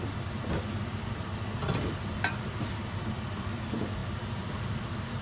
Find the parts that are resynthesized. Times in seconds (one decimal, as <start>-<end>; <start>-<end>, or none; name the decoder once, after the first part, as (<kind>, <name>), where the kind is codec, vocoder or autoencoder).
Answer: 1.6-3.4 (vocoder, BigVGAN v2); 4.0-5.2